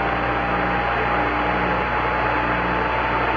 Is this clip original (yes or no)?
yes